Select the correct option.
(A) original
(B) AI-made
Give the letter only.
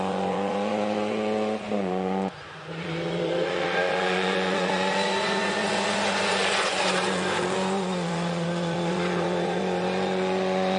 B